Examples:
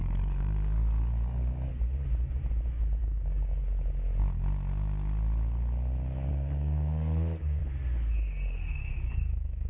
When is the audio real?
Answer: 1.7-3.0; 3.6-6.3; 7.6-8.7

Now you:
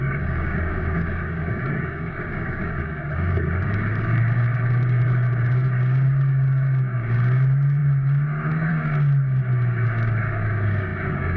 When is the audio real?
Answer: none

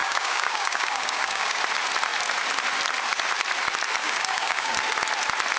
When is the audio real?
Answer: 1.6-4.0; 4.8-5.6